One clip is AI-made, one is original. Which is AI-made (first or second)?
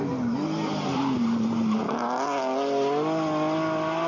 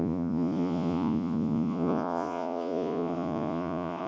second